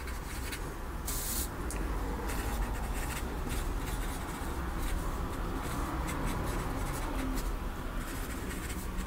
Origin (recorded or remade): recorded